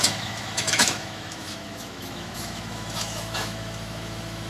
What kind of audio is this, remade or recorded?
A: remade